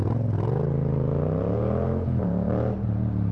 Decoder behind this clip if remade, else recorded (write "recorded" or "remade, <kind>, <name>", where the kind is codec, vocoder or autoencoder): recorded